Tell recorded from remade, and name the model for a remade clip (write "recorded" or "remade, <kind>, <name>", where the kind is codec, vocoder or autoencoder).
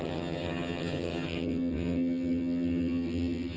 remade, vocoder, HiFi-GAN